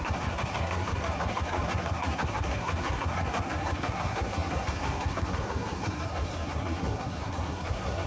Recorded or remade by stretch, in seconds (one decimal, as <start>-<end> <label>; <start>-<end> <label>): 0.0-8.1 remade